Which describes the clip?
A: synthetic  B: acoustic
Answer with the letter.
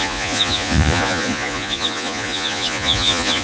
A